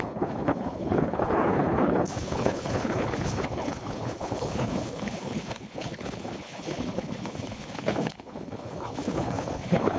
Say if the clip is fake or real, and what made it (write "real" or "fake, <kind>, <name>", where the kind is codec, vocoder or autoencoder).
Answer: fake, codec, HILCodec